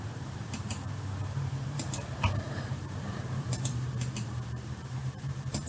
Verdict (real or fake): fake